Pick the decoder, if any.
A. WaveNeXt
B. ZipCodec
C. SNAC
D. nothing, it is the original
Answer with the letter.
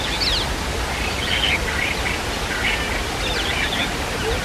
D